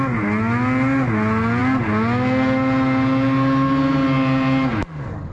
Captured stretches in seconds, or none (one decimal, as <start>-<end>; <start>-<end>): 0.0-5.3